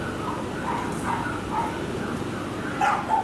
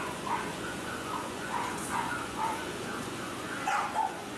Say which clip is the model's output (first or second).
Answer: second